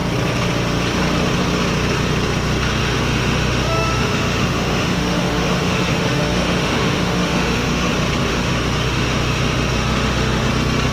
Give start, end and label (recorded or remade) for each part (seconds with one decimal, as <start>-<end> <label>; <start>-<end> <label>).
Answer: 0.0-2.8 recorded; 2.8-7.9 remade; 7.9-8.3 recorded; 8.3-10.5 remade; 10.5-10.9 recorded

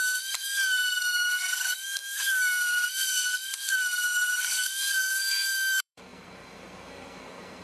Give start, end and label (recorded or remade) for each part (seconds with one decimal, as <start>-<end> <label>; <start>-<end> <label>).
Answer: 0.0-7.6 remade

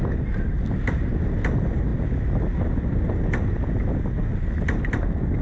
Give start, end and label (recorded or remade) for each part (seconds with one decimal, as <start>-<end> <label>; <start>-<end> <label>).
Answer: 0.0-5.4 recorded

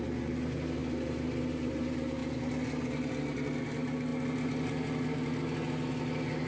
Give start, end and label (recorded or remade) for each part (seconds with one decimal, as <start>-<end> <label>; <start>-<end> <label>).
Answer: 0.0-6.5 recorded

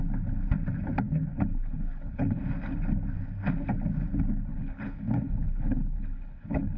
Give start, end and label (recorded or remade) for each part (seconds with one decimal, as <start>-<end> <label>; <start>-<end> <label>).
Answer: 0.0-1.3 recorded; 1.3-2.4 remade; 2.4-4.5 recorded; 4.5-6.8 remade

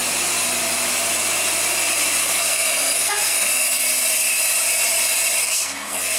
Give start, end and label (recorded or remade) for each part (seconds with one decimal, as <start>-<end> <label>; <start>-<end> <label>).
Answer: 0.0-2.2 recorded; 2.2-3.8 remade; 3.8-5.4 recorded; 5.4-6.2 remade